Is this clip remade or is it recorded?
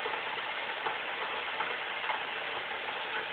recorded